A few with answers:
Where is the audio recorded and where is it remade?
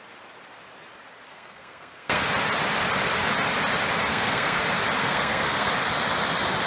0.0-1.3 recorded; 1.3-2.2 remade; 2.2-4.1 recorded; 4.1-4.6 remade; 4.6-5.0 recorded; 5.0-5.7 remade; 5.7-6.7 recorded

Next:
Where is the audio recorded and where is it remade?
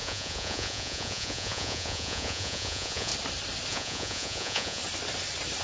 0.0-3.1 remade; 3.1-3.7 recorded; 3.7-4.8 remade; 4.8-5.6 recorded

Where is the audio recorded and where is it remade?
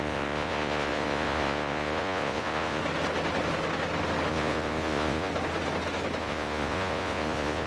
0.0-2.8 remade; 2.8-4.3 recorded; 4.3-5.3 remade; 5.3-6.2 recorded; 6.2-7.7 remade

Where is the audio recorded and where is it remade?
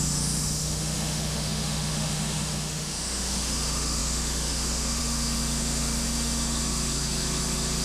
0.0-7.8 remade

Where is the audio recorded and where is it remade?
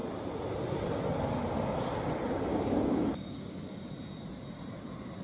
0.0-2.5 recorded; 2.5-3.6 remade; 3.6-5.2 recorded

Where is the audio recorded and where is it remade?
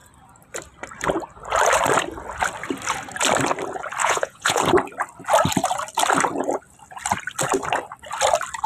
0.0-4.0 recorded; 4.0-4.6 remade; 4.6-8.7 recorded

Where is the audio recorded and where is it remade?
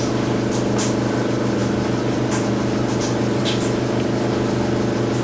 0.0-5.2 recorded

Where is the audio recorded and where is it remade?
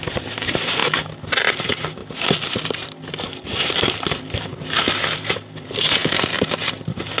0.0-2.0 remade; 2.0-3.1 recorded; 3.1-7.2 remade